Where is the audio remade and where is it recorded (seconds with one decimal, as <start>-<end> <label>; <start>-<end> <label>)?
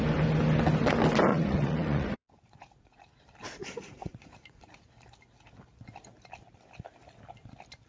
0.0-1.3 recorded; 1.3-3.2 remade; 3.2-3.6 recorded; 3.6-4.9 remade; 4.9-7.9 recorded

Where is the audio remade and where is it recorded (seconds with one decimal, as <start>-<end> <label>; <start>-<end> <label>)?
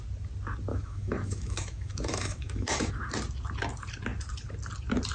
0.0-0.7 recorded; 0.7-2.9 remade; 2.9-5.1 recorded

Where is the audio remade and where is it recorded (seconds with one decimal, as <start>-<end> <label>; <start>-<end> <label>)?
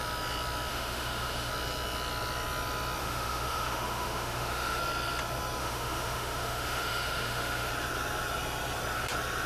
0.0-0.7 recorded; 0.7-1.5 remade; 1.5-3.0 recorded; 3.0-4.8 remade; 4.8-5.6 recorded; 5.6-7.7 remade; 7.7-9.5 recorded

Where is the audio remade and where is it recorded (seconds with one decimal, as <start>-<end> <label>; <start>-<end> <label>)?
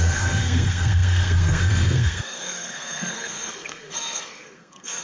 0.0-5.0 remade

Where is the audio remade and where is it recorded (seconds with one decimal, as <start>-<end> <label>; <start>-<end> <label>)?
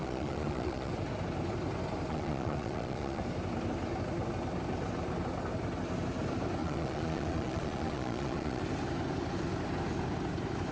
0.0-0.9 remade; 0.9-2.1 recorded; 2.1-3.2 remade; 3.2-6.6 recorded; 6.6-8.6 remade; 8.6-10.7 recorded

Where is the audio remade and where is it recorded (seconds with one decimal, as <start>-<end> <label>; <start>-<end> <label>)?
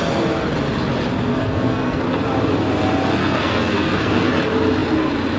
0.0-1.3 recorded; 1.3-2.0 remade; 2.0-3.2 recorded; 3.2-4.3 remade; 4.3-5.4 recorded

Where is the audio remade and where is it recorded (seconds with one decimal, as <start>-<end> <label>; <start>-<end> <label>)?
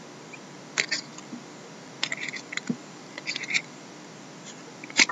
0.0-5.1 recorded